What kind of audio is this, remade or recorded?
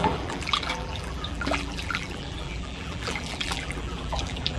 remade